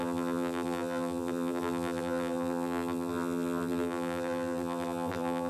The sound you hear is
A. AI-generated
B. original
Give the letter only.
A